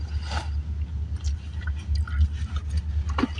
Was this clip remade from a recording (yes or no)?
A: no